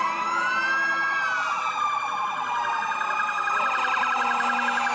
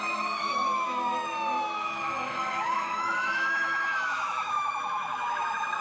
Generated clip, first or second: second